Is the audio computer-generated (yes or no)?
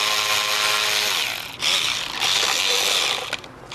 no